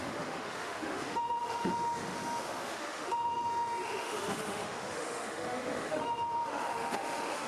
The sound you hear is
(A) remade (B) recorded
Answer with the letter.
A